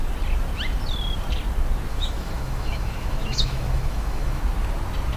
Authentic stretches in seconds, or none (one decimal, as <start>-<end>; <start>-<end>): 0.0-1.9; 4.4-5.2